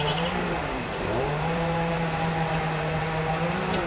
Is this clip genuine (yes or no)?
no